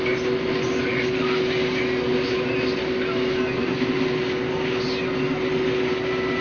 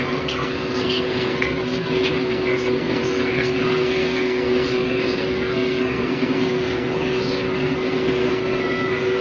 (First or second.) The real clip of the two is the first